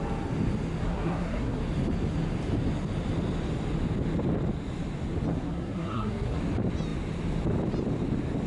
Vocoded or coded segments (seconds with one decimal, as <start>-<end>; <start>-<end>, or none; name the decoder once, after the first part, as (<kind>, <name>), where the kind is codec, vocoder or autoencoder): 0.8-1.6 (codec, SNAC); 5.3-6.4